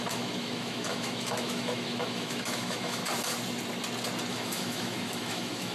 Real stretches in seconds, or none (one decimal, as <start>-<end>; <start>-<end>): 3.0-4.3